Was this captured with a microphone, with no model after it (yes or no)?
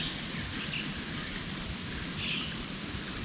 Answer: yes